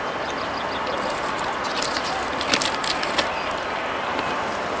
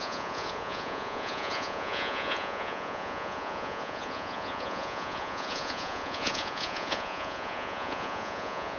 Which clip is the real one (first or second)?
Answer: first